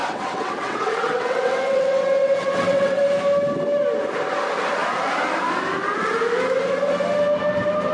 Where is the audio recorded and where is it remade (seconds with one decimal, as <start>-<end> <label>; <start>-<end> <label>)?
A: 0.0-3.0 remade; 3.0-7.9 recorded

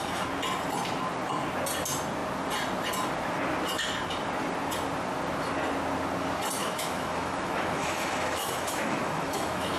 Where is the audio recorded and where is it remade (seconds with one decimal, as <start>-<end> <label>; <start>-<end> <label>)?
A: 0.0-6.6 recorded; 6.6-9.8 remade